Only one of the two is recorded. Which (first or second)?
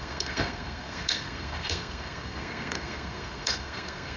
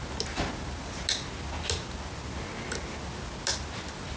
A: second